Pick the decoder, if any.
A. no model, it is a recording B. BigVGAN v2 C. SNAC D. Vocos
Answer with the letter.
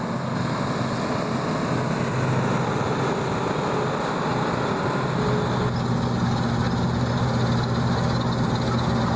A